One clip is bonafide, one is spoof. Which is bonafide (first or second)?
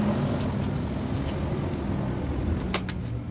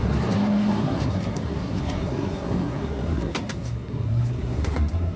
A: first